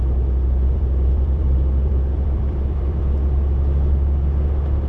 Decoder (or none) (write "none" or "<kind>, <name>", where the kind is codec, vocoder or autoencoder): vocoder, BigVGAN v2